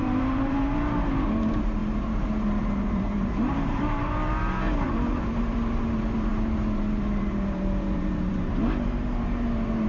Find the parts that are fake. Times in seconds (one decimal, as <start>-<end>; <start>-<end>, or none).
0.0-9.9